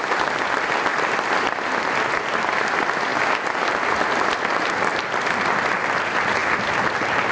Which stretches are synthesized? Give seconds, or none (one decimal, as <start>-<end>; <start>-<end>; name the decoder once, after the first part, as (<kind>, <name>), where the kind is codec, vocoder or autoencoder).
4.9-5.7 (vocoder, BigVGAN v2)